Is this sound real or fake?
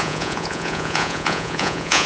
fake